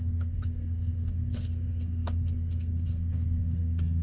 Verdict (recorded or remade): remade